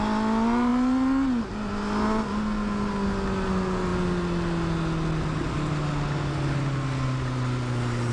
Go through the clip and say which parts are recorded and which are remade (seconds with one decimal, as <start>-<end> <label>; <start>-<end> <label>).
0.0-8.1 recorded